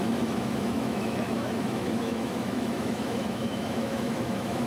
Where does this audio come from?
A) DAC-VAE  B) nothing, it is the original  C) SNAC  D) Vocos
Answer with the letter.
A